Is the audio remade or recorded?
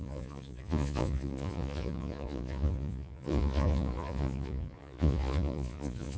remade